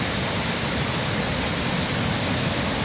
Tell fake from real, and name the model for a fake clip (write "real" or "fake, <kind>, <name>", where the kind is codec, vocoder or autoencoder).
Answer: real